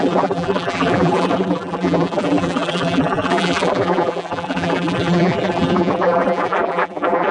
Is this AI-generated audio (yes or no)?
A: yes